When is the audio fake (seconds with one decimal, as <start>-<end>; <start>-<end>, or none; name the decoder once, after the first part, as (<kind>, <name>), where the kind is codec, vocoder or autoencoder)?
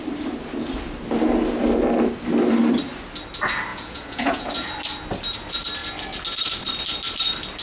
3.7-4.5 (vocoder, Vocos)